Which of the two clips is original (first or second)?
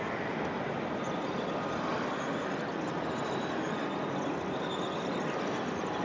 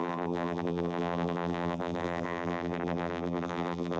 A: first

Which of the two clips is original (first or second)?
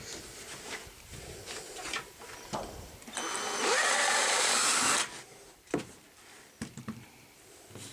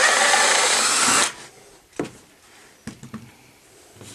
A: second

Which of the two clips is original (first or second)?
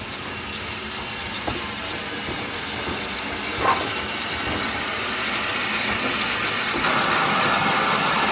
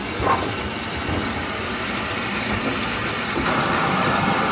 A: first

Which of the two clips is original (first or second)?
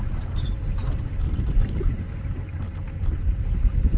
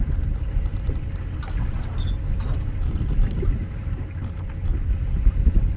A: second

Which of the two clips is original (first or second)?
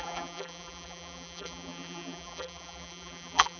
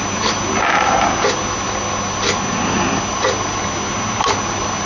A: second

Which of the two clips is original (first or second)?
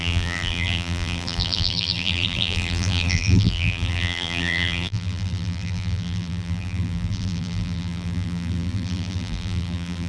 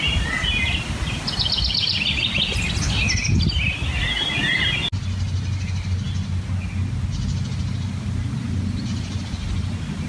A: second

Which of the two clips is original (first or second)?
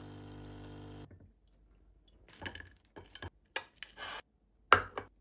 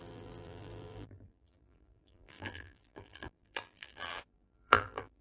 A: first